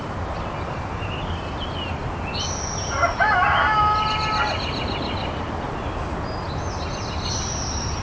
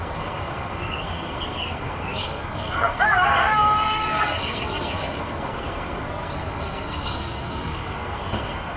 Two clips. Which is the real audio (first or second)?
first